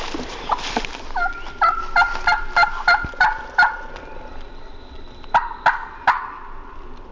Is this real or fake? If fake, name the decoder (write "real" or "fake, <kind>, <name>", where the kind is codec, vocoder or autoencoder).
real